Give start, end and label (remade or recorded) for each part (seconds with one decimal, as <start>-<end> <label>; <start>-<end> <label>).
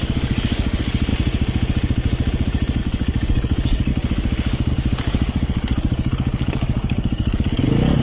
0.0-1.1 remade; 1.1-2.8 recorded; 2.8-3.9 remade; 3.9-4.7 recorded; 4.7-8.0 remade